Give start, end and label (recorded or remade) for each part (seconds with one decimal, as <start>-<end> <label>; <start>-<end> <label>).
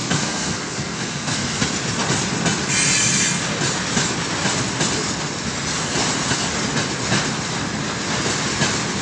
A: 0.0-1.6 remade; 1.6-9.0 recorded